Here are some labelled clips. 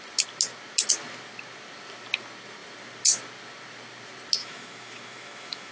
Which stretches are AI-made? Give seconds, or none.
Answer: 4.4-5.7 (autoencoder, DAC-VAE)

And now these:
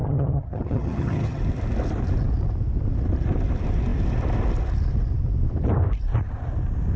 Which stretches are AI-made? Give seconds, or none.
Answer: 0.0-1.4 (vocoder, HiFi-GAN)

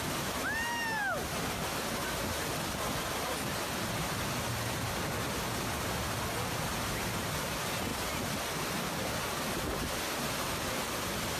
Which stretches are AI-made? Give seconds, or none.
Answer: none